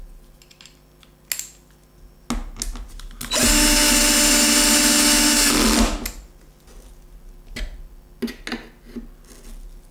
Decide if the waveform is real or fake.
real